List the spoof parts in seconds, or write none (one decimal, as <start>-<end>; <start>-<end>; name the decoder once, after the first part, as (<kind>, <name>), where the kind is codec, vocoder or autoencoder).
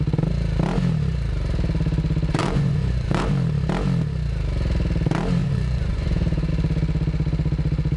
2.4-3.3 (vocoder, Vocos); 5.4-6.5